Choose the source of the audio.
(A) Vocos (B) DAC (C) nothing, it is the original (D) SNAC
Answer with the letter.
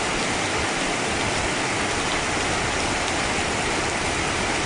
C